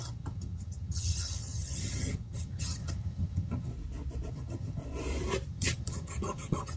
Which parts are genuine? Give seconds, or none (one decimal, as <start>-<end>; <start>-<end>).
3.7-4.3; 4.8-5.5